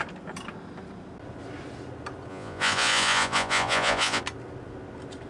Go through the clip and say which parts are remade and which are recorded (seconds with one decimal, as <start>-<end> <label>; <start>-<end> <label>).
0.0-2.3 recorded; 2.3-4.2 remade; 4.2-5.3 recorded